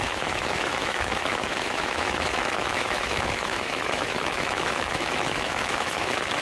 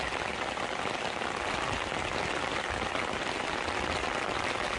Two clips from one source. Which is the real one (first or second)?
second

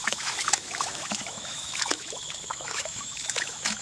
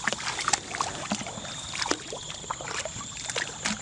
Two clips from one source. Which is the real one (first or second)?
second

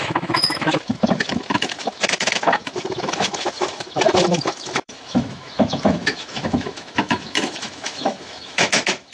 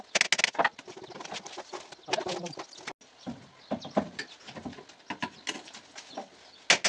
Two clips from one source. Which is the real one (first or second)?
second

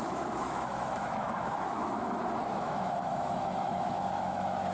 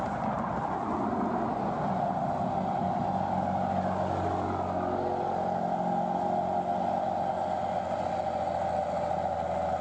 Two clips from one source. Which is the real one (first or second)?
second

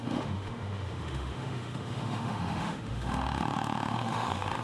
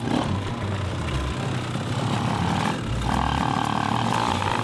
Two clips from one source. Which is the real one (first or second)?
second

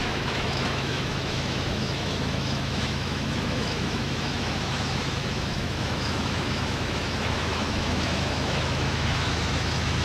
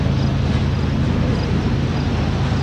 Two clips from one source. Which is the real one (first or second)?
second